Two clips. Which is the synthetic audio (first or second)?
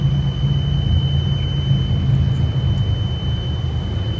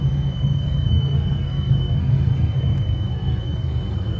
second